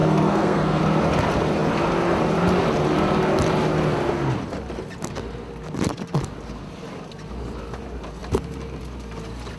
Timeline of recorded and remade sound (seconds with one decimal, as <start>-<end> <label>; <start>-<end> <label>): 0.0-0.8 remade; 0.8-9.6 recorded